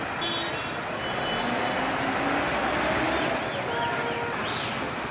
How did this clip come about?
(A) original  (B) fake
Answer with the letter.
A